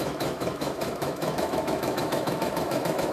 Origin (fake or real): fake